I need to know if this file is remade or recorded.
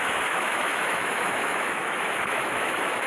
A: remade